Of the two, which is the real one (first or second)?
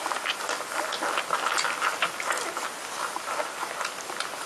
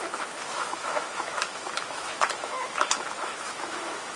first